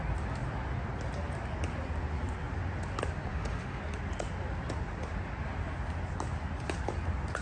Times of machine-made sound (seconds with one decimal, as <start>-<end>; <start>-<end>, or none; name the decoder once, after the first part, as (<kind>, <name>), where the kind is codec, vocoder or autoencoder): 3.3-3.8 (autoencoder, DAC-VAE)